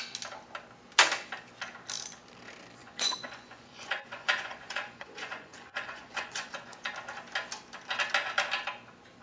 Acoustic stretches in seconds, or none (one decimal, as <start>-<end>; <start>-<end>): 0.0-2.8; 6.9-9.2